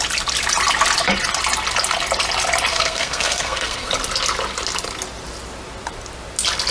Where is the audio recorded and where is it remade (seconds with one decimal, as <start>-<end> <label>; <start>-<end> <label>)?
0.0-2.7 recorded; 2.7-3.9 remade; 3.9-6.7 recorded